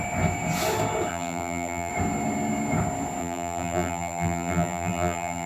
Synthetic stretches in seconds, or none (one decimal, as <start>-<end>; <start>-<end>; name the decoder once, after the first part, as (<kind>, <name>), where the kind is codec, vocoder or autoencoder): 1.1-1.9 (vocoder, BigVGAN v2); 3.2-5.5

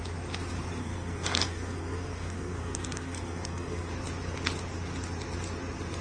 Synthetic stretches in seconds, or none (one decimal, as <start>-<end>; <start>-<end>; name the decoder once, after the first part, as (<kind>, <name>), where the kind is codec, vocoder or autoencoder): 0.8-3.9 (codec, SNAC)

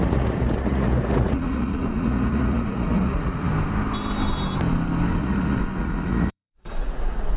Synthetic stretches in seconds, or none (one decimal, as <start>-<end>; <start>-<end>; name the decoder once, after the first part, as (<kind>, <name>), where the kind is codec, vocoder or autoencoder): 0.0-3.5 (vocoder, Vocos); 5.2-7.4

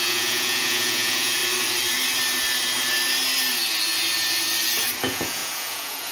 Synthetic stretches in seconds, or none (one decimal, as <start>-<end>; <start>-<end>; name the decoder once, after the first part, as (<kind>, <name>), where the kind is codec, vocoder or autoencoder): 0.0-1.4 (vocoder, Vocos); 5.0-6.1

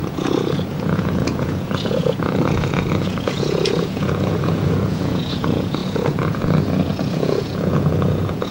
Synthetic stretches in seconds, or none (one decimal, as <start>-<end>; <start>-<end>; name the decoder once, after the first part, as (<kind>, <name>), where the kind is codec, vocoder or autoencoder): 0.0-8.5 (vocoder, Vocos)